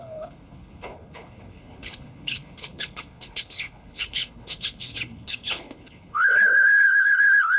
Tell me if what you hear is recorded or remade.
remade